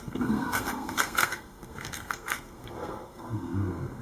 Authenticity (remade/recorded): remade